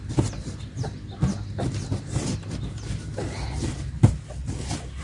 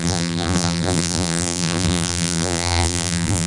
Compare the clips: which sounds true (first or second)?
first